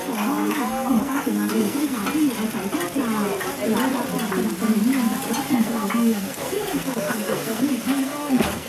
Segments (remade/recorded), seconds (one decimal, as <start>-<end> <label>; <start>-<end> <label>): 0.0-2.0 remade; 2.0-5.5 recorded; 5.5-8.7 remade